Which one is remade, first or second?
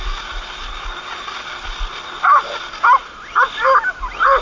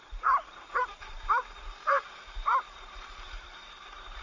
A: second